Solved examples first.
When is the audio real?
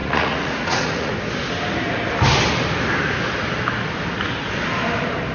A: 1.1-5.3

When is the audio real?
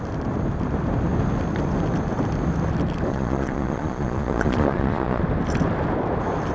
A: 0.0-3.1; 5.2-6.5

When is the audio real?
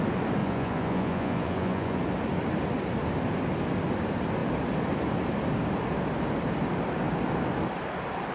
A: 0.0-0.4; 2.0-8.3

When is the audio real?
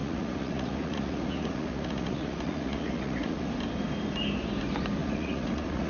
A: 3.5-5.0